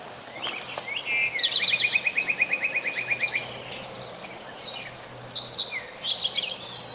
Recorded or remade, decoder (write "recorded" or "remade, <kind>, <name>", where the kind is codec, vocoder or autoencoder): recorded